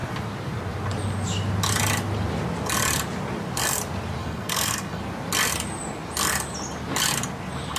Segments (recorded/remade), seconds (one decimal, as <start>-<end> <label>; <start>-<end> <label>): 0.0-4.2 recorded; 4.2-5.0 remade; 5.0-7.8 recorded